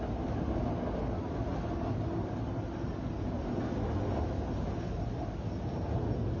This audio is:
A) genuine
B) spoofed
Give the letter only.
A